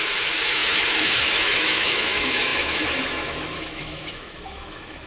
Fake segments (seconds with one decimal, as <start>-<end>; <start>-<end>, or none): 0.0-5.1